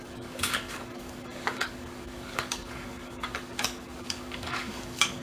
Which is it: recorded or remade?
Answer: remade